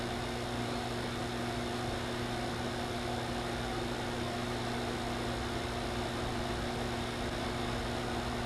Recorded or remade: recorded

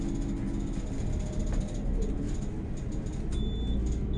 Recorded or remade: recorded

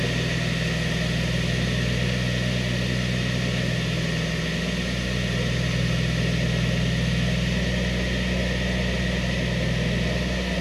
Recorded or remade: recorded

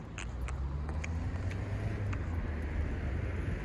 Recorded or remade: recorded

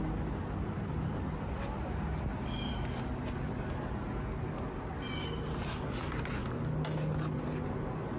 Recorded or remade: recorded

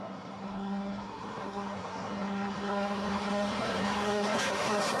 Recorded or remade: remade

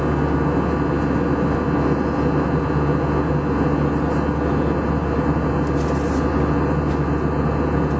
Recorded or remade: recorded